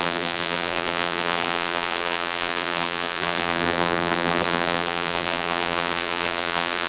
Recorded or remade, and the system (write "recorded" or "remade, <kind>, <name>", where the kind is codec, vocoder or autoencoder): remade, vocoder, BigVGAN v2